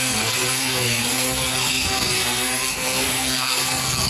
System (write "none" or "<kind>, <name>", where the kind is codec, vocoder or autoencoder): codec, SNAC